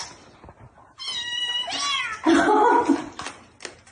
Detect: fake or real real